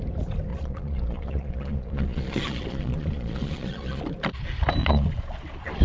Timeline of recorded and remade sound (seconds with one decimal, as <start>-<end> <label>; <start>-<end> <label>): 0.0-0.5 recorded; 0.5-4.0 remade; 4.0-4.8 recorded; 4.8-5.8 remade